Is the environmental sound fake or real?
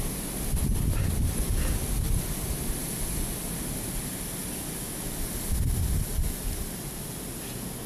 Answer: real